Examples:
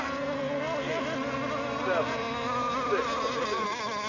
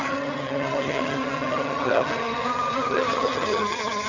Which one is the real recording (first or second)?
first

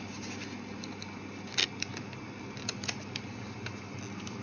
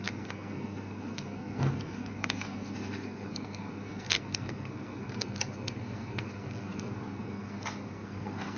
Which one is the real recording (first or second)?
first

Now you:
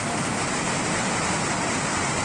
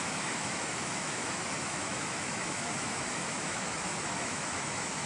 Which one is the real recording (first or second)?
first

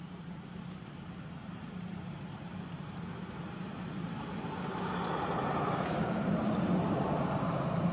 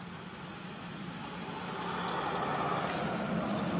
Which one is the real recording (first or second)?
second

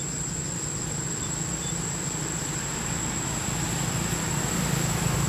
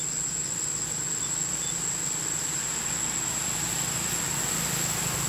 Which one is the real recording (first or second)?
second